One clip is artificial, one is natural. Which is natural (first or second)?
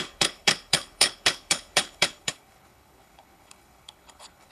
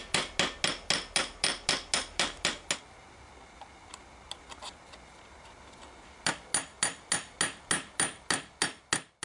second